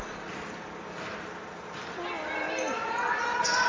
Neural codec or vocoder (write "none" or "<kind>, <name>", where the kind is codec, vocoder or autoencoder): none